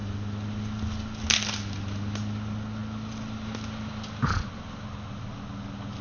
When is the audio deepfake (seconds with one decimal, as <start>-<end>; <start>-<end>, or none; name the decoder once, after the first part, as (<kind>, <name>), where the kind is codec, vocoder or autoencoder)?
none